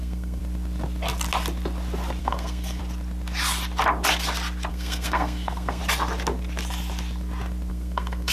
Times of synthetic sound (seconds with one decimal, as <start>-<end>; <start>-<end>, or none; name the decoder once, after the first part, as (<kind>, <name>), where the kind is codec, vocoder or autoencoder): 0.0-0.4 (codec, SNAC); 2.2-2.8; 4.7-5.8; 7.7-8.3